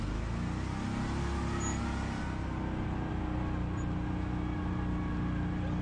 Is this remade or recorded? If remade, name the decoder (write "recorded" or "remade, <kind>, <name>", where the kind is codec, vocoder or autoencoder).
recorded